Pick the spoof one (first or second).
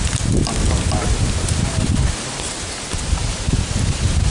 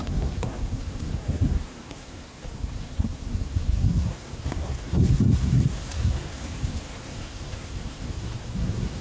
second